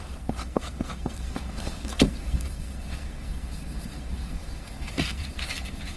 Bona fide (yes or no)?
no